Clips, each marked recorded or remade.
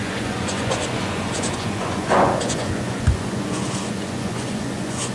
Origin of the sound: remade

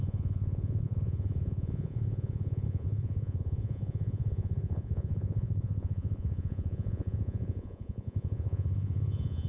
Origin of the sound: remade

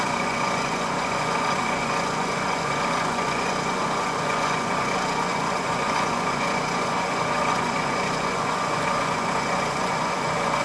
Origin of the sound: remade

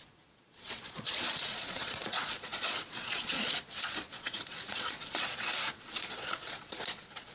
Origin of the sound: remade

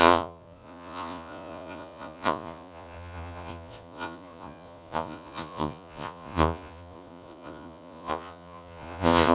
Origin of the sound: remade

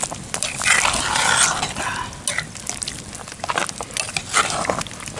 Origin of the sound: recorded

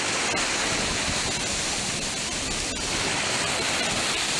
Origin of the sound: recorded